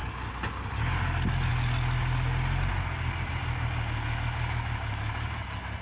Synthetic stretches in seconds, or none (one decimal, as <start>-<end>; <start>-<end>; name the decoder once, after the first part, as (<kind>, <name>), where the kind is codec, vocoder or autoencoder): none

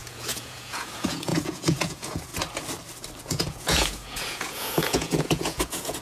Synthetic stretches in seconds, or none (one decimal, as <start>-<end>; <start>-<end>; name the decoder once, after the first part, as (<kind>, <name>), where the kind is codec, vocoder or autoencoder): 0.0-2.3 (vocoder, Vocos); 3.2-6.0

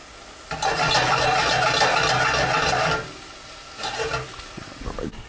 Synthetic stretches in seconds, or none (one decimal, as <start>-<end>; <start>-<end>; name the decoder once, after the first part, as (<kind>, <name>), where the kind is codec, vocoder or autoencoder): none

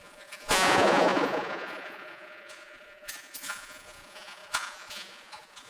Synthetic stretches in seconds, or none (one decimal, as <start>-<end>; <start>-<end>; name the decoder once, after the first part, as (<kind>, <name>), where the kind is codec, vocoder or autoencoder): 0.0-5.7 (vocoder, Vocos)